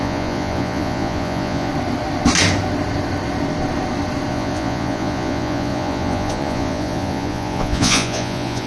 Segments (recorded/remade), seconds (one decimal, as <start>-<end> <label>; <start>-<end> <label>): 0.0-1.7 remade; 1.7-4.3 recorded; 4.3-8.7 remade

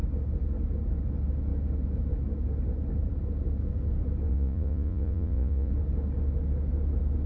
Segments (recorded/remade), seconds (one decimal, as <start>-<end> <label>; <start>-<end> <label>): 0.0-4.3 recorded; 4.3-5.7 remade; 5.7-7.3 recorded

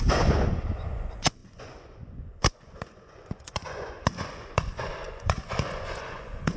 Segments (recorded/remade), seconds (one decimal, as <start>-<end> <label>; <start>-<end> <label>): 0.0-6.6 remade

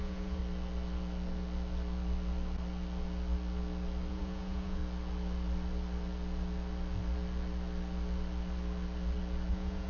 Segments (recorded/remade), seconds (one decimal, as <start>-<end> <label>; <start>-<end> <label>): 0.0-0.4 remade; 0.4-4.1 recorded; 4.1-4.8 remade; 4.8-9.5 recorded; 9.5-9.9 remade

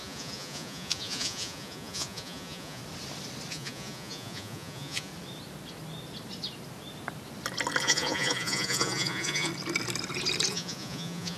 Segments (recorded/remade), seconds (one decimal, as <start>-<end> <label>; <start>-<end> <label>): 0.0-2.8 remade; 2.8-3.5 recorded; 3.5-5.1 remade; 5.1-7.8 recorded; 7.8-9.5 remade; 9.5-10.5 recorded; 10.5-11.4 remade

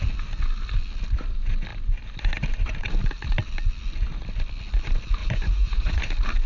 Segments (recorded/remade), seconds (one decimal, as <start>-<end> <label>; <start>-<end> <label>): 0.0-5.2 recorded; 5.2-6.0 remade; 6.0-6.5 recorded